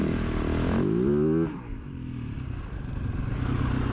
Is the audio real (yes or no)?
yes